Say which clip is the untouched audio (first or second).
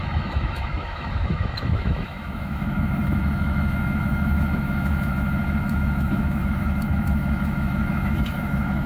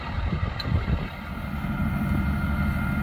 second